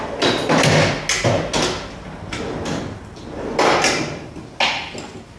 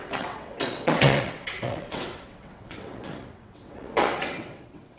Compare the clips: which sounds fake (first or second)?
second